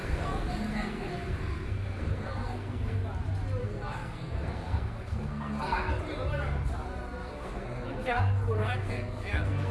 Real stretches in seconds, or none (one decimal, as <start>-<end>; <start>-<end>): 3.0-3.6; 6.0-7.2